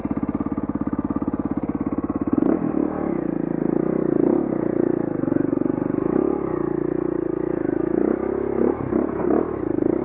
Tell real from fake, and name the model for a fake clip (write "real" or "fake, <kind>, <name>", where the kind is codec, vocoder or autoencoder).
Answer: real